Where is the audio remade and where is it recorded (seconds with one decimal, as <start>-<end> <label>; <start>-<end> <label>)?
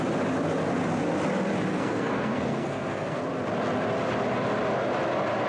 0.0-1.7 recorded; 1.7-3.2 remade; 3.2-5.5 recorded